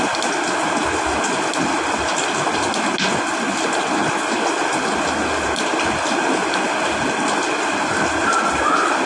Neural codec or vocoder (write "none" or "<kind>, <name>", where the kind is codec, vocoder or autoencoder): none